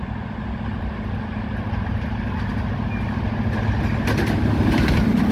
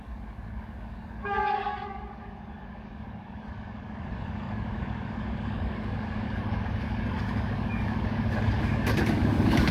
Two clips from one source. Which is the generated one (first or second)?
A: second